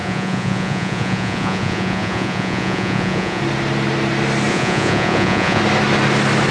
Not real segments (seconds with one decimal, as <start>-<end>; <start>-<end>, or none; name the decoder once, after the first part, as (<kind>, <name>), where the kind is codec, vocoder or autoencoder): 0.0-3.4 (vocoder, Vocos); 4.5-5.6